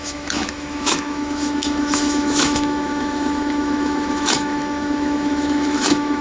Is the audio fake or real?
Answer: fake